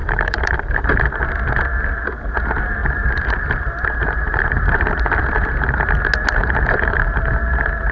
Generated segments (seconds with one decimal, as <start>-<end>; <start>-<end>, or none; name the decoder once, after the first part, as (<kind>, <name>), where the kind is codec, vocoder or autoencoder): 0.0-0.9 (vocoder, BigVGAN v2); 2.8-5.0; 6.4-7.3